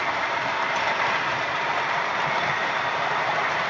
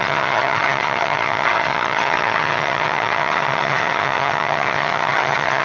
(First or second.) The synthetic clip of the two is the second